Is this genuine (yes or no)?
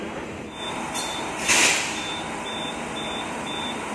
no